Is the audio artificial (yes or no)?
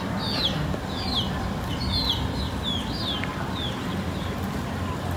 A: no